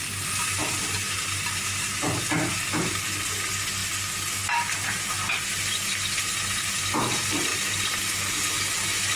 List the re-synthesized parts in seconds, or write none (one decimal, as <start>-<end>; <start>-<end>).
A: none